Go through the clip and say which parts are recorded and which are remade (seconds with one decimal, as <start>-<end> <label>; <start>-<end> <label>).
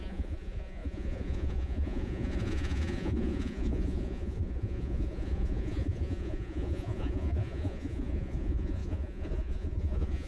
0.0-10.3 remade